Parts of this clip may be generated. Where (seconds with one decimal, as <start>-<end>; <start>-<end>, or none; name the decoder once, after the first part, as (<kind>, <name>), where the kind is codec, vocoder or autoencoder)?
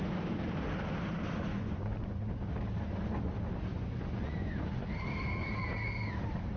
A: 1.5-2.3 (vocoder, Vocos); 3.7-4.9